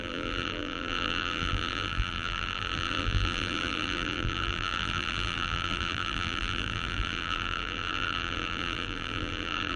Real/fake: fake